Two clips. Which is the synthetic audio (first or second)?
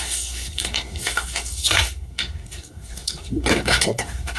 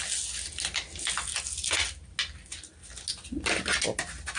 first